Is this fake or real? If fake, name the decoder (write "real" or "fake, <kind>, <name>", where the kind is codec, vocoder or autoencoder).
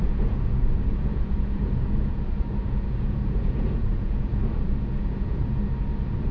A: fake, vocoder, Vocos